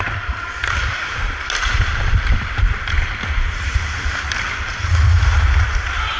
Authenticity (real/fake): fake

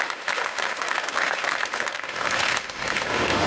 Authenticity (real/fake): fake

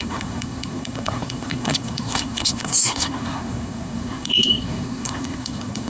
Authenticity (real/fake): fake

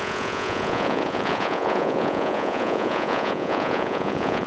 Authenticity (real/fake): fake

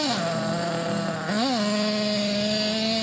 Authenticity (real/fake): real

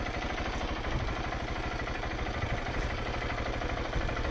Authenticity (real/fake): real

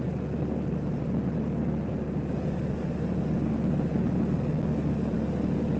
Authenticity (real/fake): real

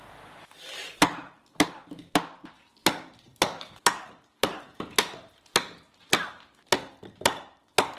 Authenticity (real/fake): real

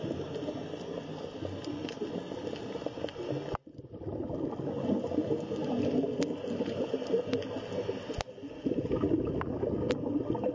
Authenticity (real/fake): real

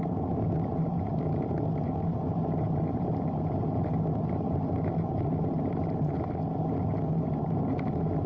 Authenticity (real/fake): real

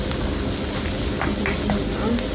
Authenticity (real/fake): real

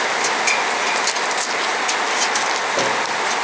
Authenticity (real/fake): real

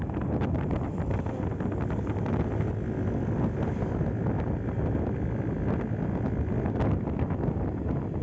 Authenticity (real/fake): real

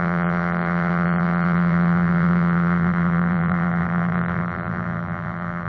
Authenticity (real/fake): fake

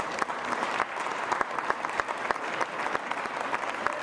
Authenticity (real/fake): real